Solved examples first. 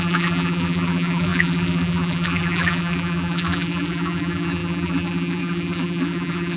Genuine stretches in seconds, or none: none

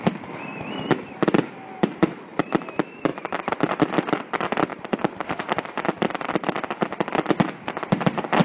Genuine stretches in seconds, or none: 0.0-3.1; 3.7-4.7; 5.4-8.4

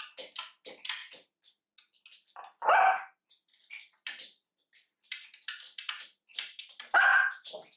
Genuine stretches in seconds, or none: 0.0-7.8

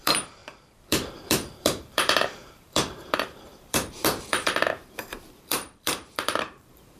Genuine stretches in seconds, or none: none

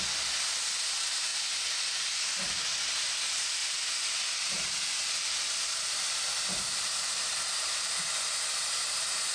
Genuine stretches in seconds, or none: 0.0-1.3; 2.6-3.6; 7.9-9.3

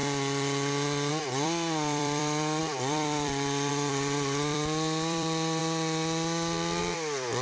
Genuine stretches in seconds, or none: 0.0-1.1; 5.6-6.8